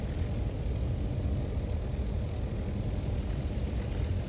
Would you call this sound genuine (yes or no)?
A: yes